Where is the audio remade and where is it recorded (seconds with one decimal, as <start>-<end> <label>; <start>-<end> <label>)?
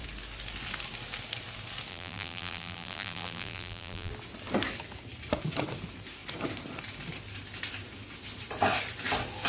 0.0-1.9 recorded; 1.9-4.1 remade; 4.1-9.5 recorded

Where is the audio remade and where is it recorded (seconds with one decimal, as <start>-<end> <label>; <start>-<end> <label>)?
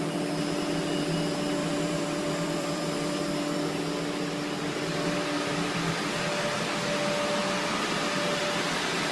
0.0-1.6 recorded; 1.6-3.2 remade; 3.2-9.1 recorded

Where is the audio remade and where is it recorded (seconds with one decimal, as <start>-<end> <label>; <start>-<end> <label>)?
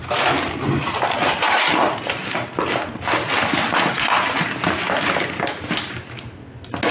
0.0-6.9 recorded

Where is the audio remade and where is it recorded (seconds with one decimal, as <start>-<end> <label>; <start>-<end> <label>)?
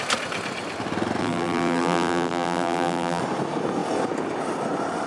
0.0-1.2 recorded; 1.2-3.2 remade; 3.2-5.1 recorded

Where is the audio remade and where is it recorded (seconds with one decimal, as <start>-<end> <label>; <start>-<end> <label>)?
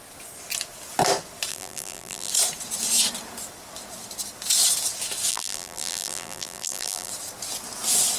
0.0-1.5 recorded; 1.5-2.3 remade; 2.3-5.3 recorded; 5.3-7.1 remade; 7.1-8.2 recorded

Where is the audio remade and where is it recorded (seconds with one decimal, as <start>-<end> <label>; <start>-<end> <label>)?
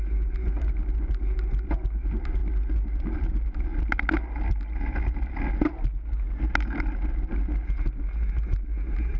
0.0-9.2 recorded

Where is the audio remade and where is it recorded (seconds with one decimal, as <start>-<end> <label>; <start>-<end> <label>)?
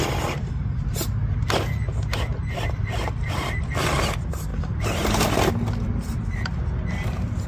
0.0-7.5 recorded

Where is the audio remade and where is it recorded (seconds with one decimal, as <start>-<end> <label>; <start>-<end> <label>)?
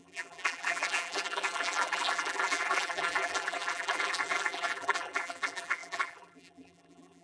0.0-7.2 remade